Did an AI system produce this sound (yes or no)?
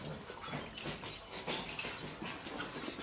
no